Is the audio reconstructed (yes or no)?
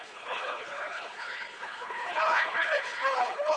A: yes